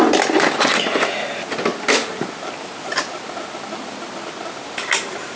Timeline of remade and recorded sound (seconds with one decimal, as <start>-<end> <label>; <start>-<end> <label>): 0.0-5.4 recorded